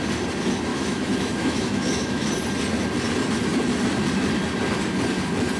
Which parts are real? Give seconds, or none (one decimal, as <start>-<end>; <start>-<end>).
0.0-0.7; 2.3-5.6